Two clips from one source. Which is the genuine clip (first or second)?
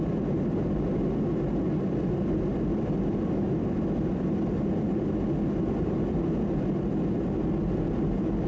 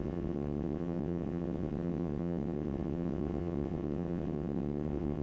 first